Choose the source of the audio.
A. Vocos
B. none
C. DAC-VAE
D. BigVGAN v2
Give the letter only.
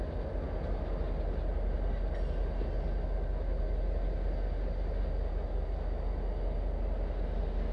B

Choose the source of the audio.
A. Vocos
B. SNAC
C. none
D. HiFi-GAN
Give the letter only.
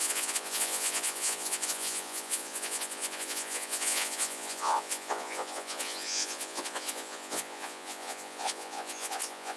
A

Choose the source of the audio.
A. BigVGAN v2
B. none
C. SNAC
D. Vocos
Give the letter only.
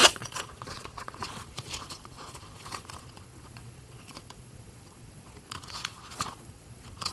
D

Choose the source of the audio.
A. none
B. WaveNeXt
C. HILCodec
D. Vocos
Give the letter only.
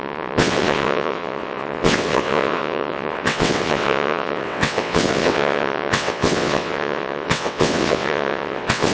B